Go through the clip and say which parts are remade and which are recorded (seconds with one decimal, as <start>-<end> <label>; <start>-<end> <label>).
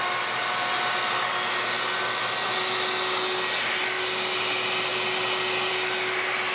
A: 0.0-6.5 recorded